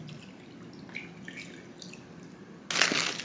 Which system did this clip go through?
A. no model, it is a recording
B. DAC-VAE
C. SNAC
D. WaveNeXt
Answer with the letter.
A